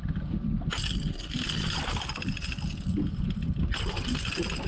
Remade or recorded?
recorded